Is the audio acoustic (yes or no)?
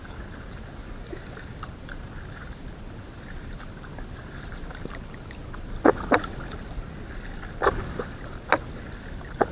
yes